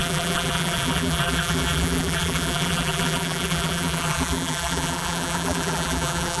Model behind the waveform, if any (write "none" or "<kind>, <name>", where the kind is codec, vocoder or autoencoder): vocoder, BigVGAN v2